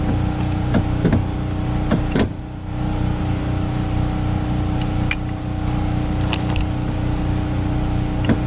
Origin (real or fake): real